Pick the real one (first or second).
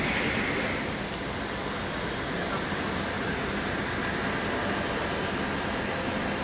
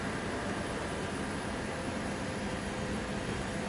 first